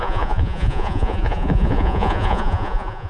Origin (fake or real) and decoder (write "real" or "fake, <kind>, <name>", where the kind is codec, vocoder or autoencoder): fake, vocoder, Vocos